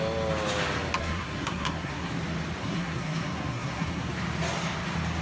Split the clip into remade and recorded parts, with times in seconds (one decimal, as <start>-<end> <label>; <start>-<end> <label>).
0.0-1.0 recorded; 1.0-2.1 remade; 2.1-2.6 recorded; 2.6-4.1 remade; 4.1-5.2 recorded